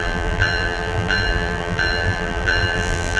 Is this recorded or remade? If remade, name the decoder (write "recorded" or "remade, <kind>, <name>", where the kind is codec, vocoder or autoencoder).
remade, vocoder, BigVGAN v2